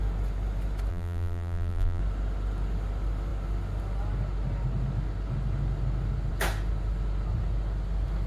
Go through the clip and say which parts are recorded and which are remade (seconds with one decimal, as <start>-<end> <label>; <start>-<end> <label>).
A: 0.0-0.9 recorded; 0.9-2.0 remade; 2.0-8.3 recorded

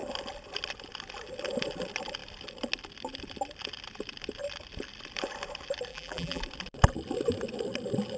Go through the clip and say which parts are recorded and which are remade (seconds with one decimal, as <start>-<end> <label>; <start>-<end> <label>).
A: 0.0-5.9 recorded; 5.9-6.4 remade; 6.4-8.2 recorded

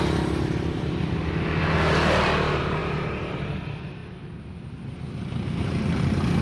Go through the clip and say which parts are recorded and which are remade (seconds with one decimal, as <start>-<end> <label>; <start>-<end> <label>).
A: 0.0-4.0 recorded; 4.0-4.6 remade; 4.6-6.4 recorded

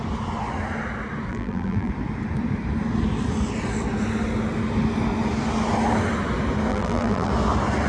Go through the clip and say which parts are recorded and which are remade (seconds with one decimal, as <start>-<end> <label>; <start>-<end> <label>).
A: 0.0-1.3 recorded; 1.3-1.9 remade; 1.9-6.7 recorded; 6.7-7.3 remade; 7.3-7.9 recorded